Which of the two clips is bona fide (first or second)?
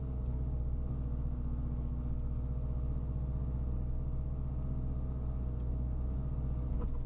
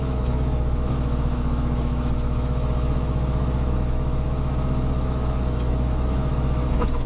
first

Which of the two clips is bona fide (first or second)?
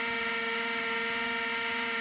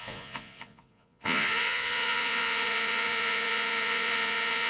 first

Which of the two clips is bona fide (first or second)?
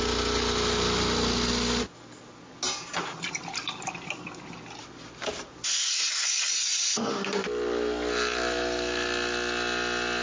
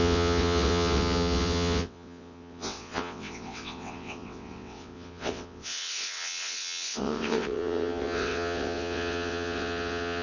first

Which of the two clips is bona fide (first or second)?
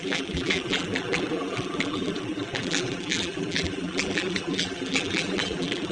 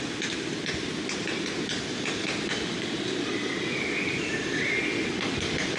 second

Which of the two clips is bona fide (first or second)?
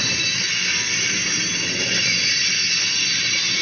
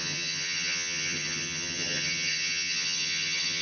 first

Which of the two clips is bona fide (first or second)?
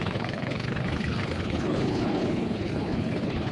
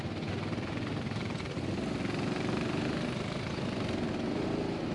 second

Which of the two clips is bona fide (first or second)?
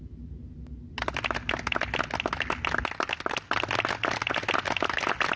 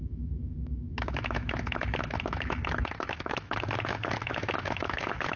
first